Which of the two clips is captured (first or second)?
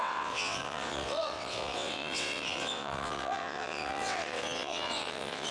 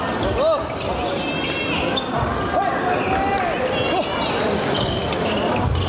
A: second